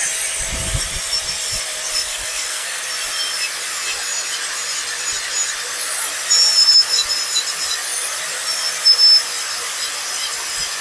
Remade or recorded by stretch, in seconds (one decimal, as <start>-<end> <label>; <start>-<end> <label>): 0.0-1.9 recorded; 1.9-2.8 remade; 2.8-10.8 recorded